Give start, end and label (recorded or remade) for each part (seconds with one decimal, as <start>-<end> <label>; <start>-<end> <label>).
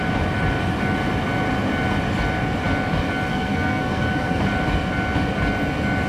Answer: 0.0-3.3 recorded; 3.3-4.4 remade; 4.4-6.1 recorded